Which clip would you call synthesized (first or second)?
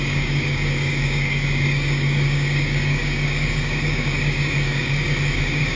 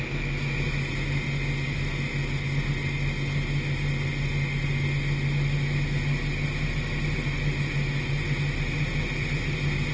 first